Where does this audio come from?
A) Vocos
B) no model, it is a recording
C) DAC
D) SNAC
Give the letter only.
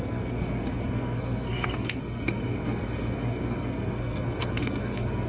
D